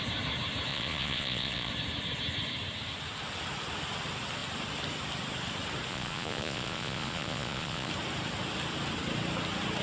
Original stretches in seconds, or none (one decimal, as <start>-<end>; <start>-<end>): 0.0-0.7; 1.7-5.9; 7.9-9.8